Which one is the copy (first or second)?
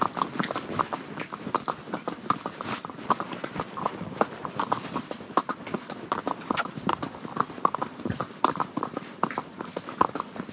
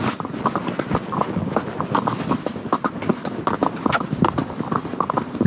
first